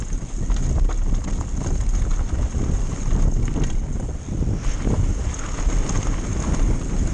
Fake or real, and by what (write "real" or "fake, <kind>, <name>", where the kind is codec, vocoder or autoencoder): real